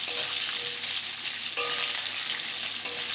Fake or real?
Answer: real